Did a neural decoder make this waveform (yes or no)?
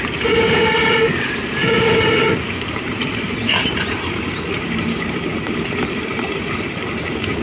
yes